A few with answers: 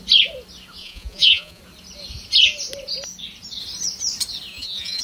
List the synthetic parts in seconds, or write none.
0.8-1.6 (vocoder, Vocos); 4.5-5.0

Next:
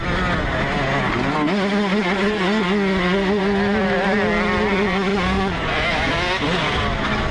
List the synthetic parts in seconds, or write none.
5.1-6.1 (vocoder, Vocos)